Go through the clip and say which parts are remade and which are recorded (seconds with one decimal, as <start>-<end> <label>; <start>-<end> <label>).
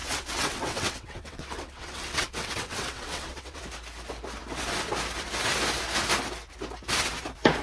0.0-3.6 remade; 3.6-7.6 recorded